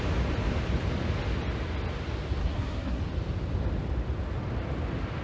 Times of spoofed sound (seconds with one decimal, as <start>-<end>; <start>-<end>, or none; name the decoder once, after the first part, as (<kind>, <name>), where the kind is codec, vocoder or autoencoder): 2.4-3.0 (codec, SNAC)